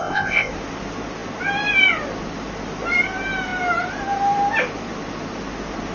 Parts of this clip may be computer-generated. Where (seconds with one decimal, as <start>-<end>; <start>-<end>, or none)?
0.0-0.5